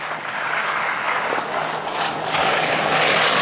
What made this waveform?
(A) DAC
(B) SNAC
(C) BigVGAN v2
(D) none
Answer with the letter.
A